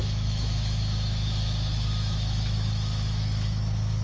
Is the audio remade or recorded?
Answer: remade